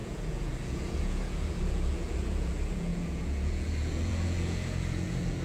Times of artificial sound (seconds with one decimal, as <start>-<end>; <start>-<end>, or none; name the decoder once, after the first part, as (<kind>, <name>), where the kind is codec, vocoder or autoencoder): 0.0-5.4 (vocoder, Vocos)